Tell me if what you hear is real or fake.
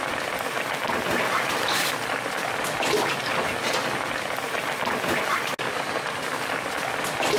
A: real